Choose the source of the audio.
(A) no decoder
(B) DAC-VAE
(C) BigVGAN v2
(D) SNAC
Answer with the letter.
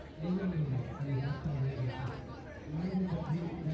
A